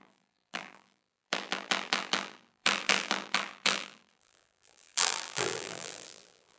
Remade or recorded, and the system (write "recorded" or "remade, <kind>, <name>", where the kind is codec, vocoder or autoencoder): remade, vocoder, BigVGAN v2